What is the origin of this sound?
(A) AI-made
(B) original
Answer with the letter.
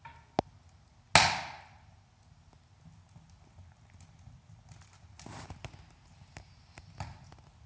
B